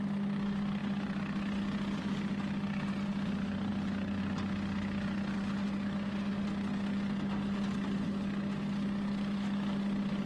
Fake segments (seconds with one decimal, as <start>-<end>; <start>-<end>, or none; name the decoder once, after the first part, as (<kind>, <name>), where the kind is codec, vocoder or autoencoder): none